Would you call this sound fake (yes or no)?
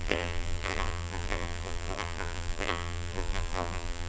yes